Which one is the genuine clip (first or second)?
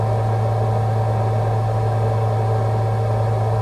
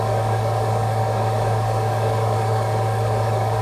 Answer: first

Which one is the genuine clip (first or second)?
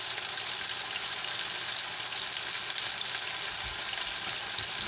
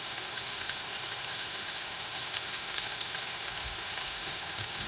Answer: first